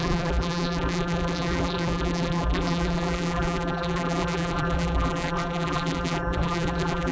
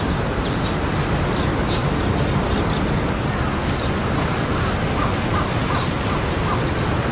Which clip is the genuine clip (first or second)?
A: second